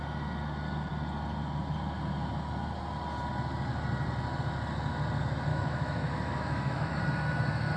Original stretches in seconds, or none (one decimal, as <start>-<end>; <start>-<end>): 0.0-5.5; 7.0-7.8

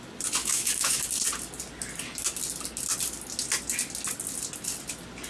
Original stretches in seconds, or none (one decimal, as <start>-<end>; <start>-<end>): 0.0-0.4; 1.0-5.3

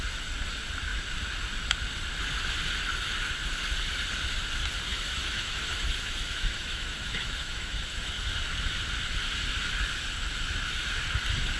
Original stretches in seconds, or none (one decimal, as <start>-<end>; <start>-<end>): 0.0-4.9; 8.2-11.6

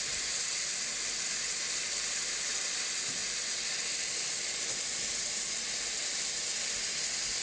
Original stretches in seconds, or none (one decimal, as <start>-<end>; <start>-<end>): 0.0-7.4